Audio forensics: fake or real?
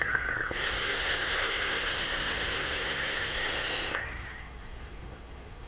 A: fake